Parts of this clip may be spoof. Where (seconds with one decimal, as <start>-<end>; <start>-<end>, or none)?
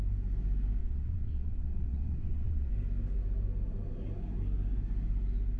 0.8-2.7